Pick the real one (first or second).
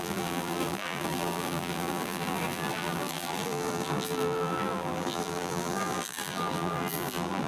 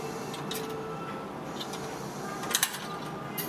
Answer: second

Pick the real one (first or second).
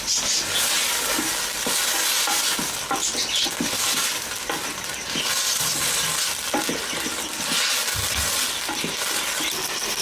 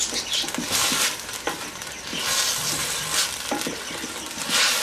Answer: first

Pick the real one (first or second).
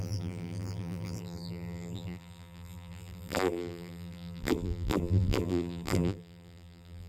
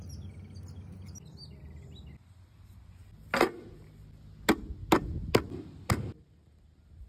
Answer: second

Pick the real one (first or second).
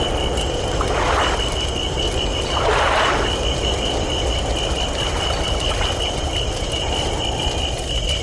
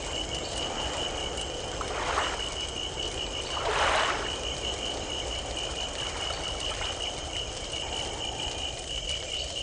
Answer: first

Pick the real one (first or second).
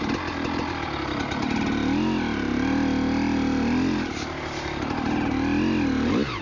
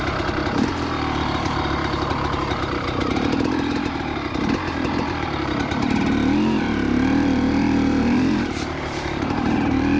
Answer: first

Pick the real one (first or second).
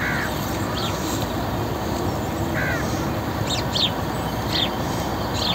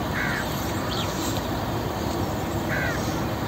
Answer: first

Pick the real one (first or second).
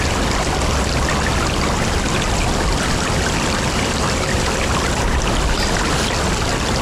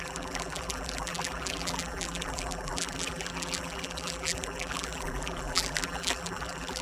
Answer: first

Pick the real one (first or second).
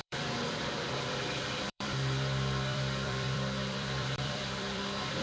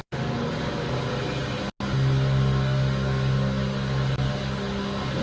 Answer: second